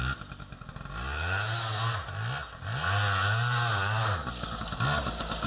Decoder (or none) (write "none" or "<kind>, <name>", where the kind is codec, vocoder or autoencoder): none